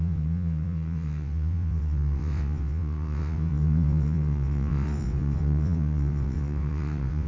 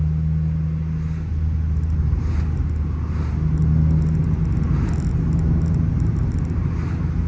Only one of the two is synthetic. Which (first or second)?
first